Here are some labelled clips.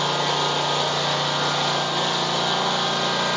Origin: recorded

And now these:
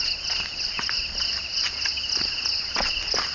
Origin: recorded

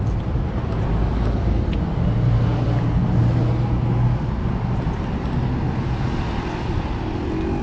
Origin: recorded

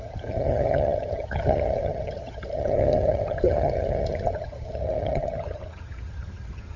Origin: remade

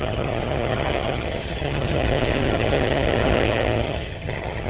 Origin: remade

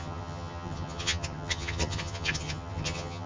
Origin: remade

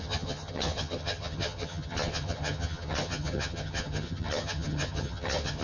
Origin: remade